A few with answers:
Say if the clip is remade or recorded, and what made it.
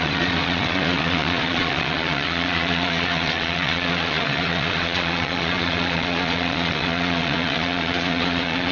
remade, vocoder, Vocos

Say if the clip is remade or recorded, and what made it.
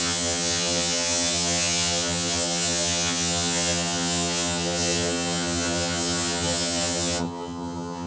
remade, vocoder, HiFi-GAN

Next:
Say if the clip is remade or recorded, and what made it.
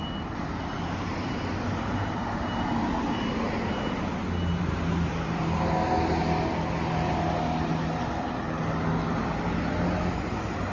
recorded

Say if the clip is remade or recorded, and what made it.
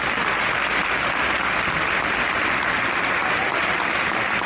recorded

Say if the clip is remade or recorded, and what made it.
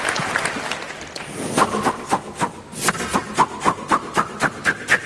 recorded